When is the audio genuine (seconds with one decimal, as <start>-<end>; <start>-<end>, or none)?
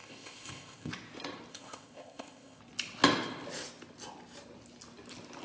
0.9-1.5; 2.6-5.4